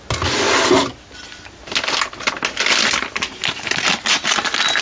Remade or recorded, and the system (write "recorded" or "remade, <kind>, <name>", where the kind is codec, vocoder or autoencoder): recorded